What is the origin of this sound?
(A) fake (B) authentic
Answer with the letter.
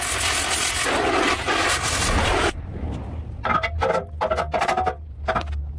B